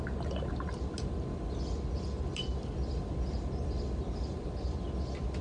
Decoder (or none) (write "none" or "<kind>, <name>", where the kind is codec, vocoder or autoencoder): none